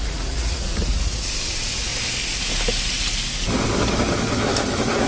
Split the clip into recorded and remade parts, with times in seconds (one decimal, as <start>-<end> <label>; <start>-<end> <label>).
0.0-1.9 remade; 1.9-5.1 recorded